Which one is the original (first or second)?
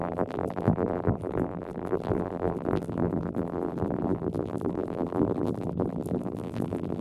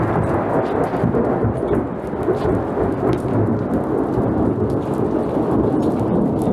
second